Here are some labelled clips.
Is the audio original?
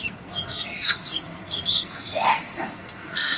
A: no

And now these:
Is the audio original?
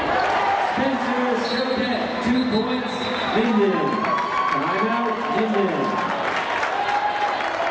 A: yes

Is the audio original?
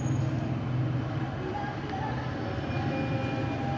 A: yes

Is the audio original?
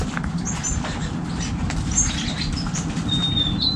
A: yes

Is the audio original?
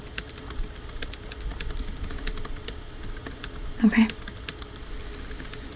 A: yes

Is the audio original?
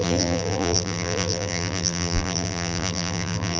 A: no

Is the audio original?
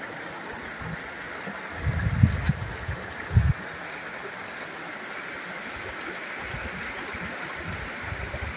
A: yes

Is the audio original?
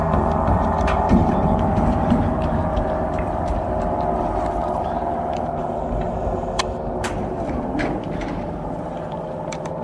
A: no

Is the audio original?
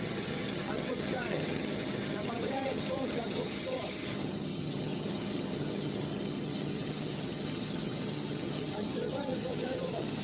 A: no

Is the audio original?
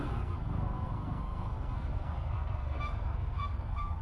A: no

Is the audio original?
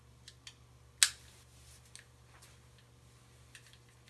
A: yes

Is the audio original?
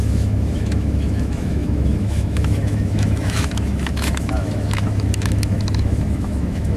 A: no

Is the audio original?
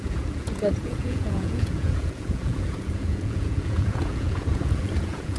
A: no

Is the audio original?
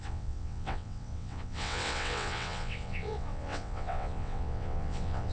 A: no